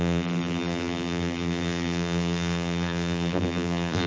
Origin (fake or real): fake